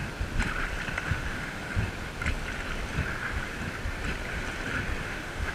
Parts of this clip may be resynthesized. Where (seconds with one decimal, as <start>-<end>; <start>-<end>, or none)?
1.1-1.7; 5.0-5.5